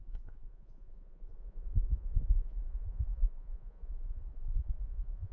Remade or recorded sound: remade